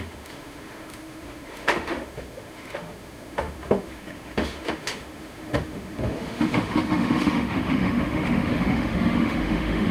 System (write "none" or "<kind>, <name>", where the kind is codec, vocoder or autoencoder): autoencoder, DAC-VAE